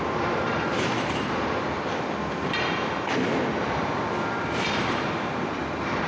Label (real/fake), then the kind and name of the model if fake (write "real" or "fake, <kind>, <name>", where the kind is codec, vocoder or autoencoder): fake, vocoder, BigVGAN v2